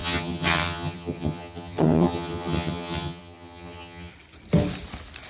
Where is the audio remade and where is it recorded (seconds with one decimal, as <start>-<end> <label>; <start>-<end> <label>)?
0.0-4.1 remade; 4.1-5.3 recorded